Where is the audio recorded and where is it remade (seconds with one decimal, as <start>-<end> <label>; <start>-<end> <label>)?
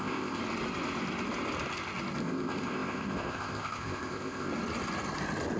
0.0-0.4 remade; 0.4-2.2 recorded; 2.2-4.5 remade; 4.5-5.6 recorded